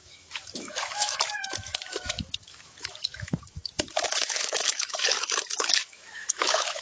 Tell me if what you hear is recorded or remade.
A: remade